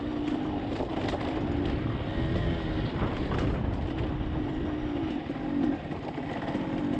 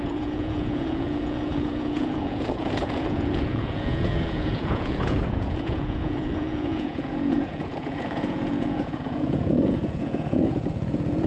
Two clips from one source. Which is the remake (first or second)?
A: second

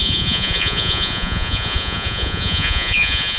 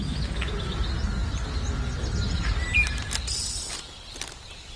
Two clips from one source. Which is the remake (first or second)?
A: first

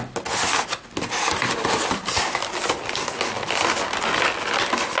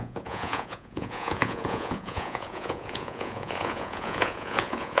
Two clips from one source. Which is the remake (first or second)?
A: second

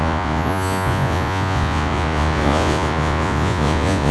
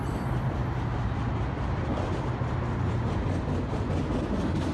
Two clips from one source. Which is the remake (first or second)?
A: first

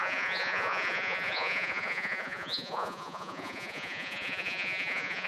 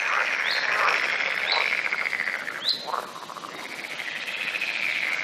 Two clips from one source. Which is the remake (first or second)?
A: first